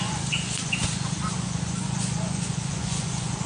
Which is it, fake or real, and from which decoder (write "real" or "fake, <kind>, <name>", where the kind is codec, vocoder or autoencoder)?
fake, vocoder, Vocos